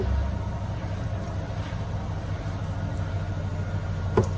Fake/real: real